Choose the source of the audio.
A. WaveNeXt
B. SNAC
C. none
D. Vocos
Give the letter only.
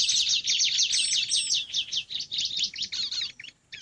C